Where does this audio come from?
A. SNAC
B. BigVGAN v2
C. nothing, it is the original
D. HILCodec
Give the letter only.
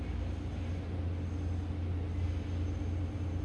C